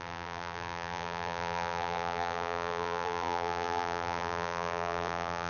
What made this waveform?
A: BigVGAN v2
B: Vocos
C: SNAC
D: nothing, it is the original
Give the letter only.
A